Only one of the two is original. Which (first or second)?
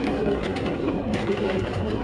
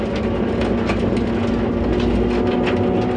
second